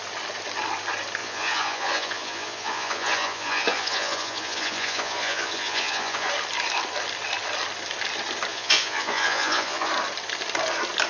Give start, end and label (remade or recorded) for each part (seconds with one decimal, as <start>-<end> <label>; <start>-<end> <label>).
0.0-1.2 recorded; 1.2-6.3 remade; 6.3-8.5 recorded; 8.5-9.9 remade; 9.9-11.1 recorded